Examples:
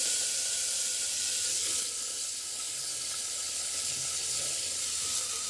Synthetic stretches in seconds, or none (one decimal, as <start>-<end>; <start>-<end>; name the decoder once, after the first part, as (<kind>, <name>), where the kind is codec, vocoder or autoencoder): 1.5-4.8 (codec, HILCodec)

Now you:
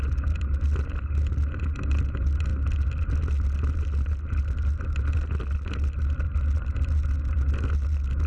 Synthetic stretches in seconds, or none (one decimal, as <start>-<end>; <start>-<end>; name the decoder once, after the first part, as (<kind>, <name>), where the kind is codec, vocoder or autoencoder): none

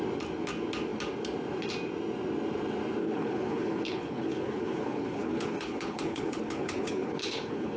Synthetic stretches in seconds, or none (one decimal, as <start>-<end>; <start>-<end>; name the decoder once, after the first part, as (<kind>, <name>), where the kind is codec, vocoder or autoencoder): 3.0-7.8 (codec, HILCodec)

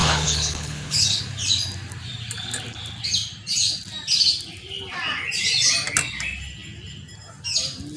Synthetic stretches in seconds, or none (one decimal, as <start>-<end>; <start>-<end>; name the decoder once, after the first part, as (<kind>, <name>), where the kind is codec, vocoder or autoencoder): 0.0-1.2 (codec, HILCodec)

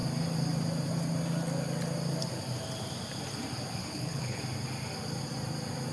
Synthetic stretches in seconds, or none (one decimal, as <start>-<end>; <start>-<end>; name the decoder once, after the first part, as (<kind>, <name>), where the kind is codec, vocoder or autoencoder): 3.8-4.4 (codec, HILCodec)

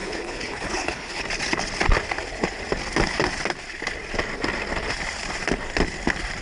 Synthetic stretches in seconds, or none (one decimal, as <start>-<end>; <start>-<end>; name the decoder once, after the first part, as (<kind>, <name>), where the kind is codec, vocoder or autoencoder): 0.0-1.2 (codec, HILCodec)

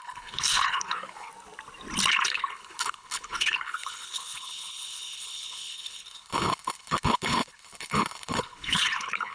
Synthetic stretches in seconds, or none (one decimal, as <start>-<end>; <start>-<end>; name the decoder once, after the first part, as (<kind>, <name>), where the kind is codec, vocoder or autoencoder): 0.0-1.3 (codec, HILCodec); 2.1-9.3